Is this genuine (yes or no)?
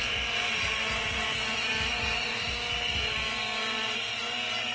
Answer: yes